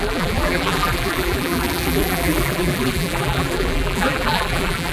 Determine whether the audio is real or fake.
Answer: fake